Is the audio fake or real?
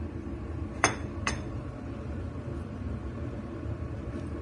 fake